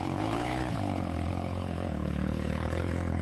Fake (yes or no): yes